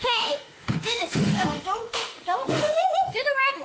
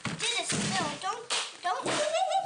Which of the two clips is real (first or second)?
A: second